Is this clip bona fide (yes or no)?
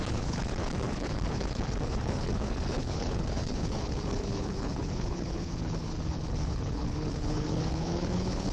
no